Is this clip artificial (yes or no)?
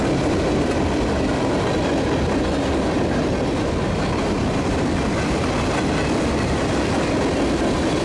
no